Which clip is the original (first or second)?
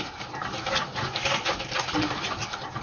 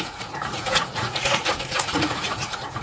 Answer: first